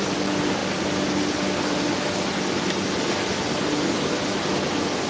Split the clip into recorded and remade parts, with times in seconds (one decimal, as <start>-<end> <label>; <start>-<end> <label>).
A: 0.0-5.1 recorded